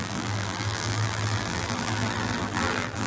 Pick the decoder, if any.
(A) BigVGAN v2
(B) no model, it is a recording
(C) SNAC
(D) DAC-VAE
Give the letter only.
A